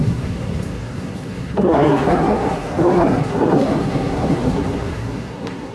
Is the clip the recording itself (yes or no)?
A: no